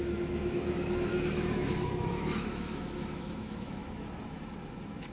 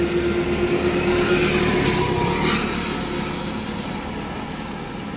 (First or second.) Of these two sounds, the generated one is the first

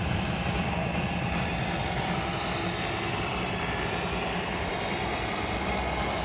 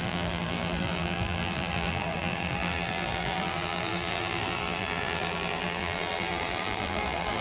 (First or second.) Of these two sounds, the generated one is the second